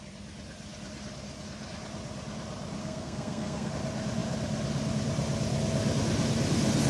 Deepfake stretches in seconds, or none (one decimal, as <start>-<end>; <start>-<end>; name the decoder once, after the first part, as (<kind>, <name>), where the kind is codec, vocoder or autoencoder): 2.8-3.7 (codec, SNAC)